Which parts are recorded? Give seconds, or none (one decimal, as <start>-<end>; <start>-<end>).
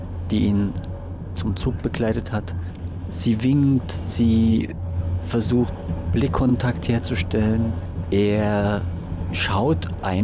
0.0-4.5; 5.0-10.2